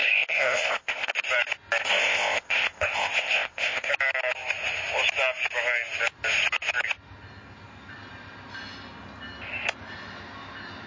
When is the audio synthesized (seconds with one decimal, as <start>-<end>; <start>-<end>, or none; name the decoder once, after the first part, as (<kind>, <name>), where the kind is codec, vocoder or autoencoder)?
0.0-1.1 (codec, ZipCodec); 1.8-3.9